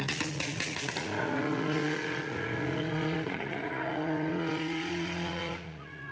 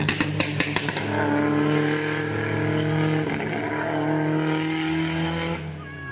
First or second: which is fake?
first